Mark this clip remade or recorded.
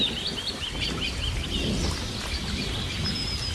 recorded